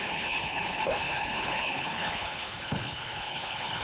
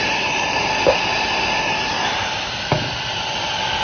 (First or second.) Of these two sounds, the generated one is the first